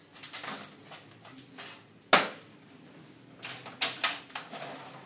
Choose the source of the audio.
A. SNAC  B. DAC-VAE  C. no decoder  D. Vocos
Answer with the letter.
C